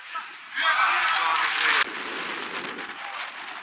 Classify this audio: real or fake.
real